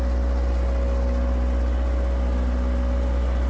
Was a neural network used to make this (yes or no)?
no